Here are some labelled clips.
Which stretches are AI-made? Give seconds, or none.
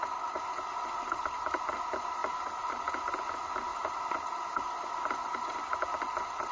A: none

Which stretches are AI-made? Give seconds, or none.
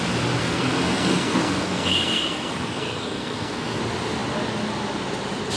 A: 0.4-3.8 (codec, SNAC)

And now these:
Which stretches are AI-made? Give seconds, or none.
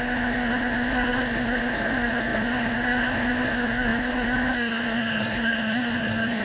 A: 0.0-6.4 (codec, SNAC)